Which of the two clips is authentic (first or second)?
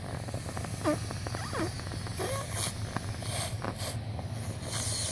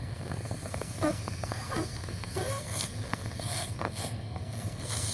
first